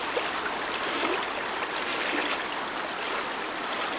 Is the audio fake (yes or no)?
no